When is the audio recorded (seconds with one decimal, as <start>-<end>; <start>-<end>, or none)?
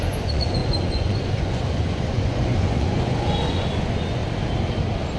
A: 4.2-5.2